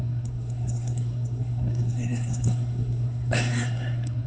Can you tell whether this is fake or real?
fake